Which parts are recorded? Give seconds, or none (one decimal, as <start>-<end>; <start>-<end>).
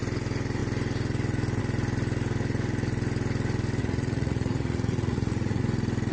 0.0-3.8; 5.6-6.1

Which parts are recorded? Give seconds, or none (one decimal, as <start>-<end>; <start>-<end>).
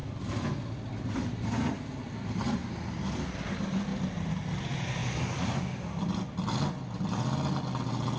0.0-8.2